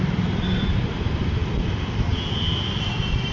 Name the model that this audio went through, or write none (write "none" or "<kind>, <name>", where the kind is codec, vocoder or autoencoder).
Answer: none